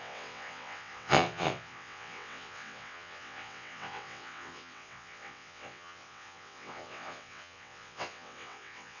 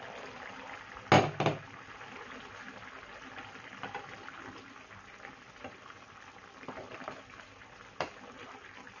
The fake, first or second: first